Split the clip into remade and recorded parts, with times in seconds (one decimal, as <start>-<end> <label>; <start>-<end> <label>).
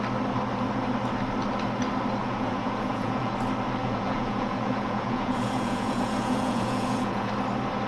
0.0-2.2 recorded; 2.2-3.3 remade; 3.3-3.8 recorded; 3.8-7.3 remade; 7.3-7.9 recorded